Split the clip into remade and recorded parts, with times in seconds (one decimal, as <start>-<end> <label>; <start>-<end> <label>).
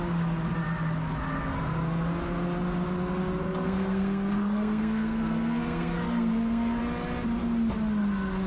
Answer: 0.0-3.4 recorded; 3.4-6.8 remade; 6.8-8.5 recorded